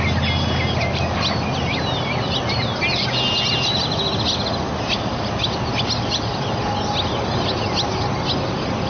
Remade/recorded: recorded